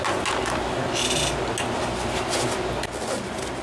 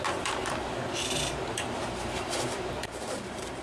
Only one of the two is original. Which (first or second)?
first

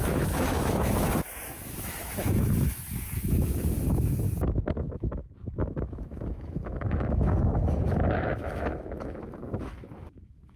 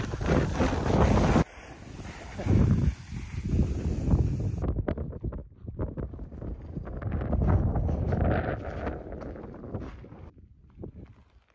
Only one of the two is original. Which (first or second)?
second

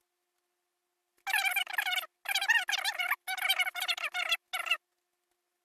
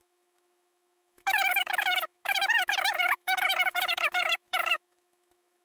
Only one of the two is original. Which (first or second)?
first